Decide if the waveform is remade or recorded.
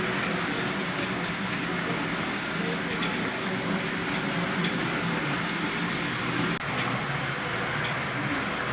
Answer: recorded